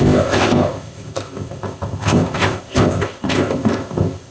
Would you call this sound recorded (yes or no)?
no